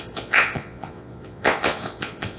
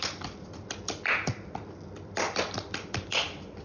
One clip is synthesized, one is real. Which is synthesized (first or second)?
first